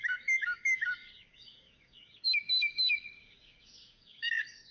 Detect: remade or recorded remade